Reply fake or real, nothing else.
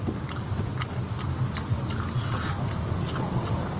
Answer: real